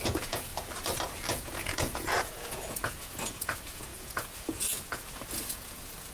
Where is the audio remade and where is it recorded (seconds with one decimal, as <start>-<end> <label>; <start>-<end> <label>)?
0.0-0.5 remade; 0.5-1.3 recorded; 1.3-6.1 remade